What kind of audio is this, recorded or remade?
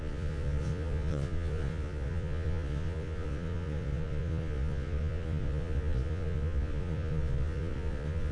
remade